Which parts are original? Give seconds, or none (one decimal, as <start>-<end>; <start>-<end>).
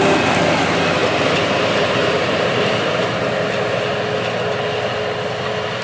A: 0.0-1.0; 3.2-5.8